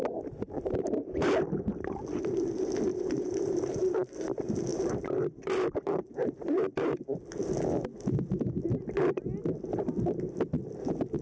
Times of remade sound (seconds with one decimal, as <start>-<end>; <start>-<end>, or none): 2.9-3.9; 4.7-7.0